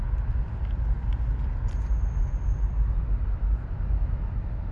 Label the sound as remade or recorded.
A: recorded